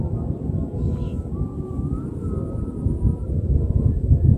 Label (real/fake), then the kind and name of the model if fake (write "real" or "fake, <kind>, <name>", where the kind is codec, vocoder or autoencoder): real